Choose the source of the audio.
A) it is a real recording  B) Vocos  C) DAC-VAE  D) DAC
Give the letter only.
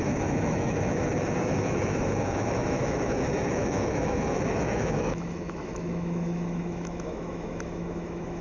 C